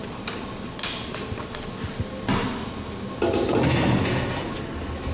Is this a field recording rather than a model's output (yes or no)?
yes